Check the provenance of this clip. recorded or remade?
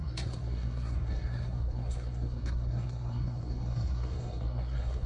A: remade